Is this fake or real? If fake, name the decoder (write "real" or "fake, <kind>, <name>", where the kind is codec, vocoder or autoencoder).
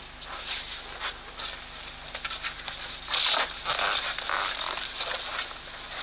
real